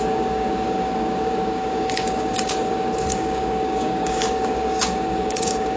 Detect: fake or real fake